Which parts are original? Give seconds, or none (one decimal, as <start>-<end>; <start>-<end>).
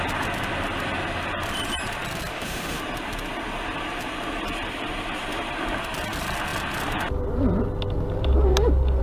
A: 0.0-2.3; 2.8-9.0